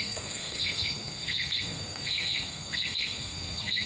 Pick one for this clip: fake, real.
fake